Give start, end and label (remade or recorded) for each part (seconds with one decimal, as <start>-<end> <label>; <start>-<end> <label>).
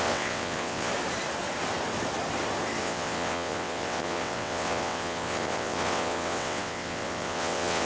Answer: 0.0-0.9 remade; 0.9-2.8 recorded; 2.8-7.9 remade